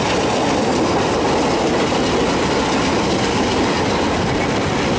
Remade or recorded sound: recorded